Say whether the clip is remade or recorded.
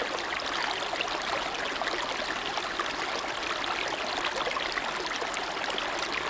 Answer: recorded